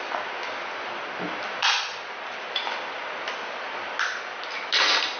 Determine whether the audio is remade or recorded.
recorded